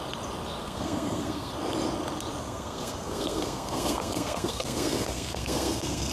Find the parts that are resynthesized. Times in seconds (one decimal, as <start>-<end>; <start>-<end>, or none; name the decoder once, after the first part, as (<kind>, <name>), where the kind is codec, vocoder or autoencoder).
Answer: 0.6-1.5 (codec, SNAC); 2.4-6.1